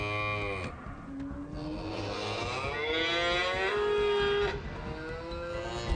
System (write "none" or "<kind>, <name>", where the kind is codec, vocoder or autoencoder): none